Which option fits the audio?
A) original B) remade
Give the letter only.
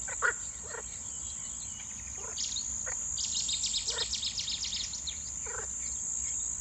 A